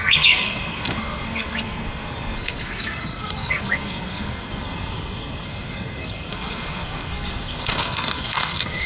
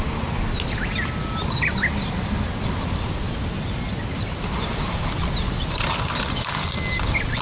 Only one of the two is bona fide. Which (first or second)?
second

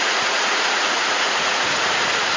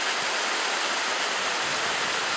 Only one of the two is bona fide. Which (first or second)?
second